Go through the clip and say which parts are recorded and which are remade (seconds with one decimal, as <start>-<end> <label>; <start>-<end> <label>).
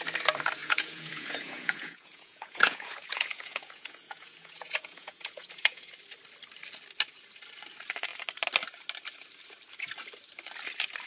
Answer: 0.0-0.6 recorded; 0.6-5.9 remade; 5.9-11.1 recorded